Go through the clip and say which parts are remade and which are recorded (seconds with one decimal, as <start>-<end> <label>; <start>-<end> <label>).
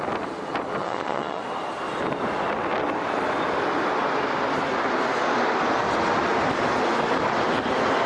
0.0-0.8 recorded; 0.8-1.4 remade; 1.4-8.1 recorded